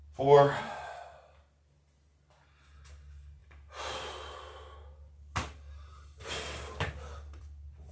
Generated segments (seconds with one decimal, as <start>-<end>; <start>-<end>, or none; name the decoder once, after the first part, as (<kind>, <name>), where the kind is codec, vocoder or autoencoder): none